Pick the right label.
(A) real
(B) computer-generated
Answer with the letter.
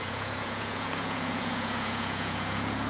B